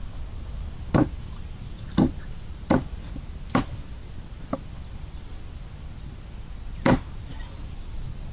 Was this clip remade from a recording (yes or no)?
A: no